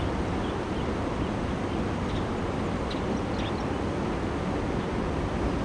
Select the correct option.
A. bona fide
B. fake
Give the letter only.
A